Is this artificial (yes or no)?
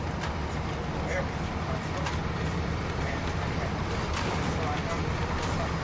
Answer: no